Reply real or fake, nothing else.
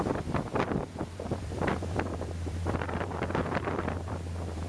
fake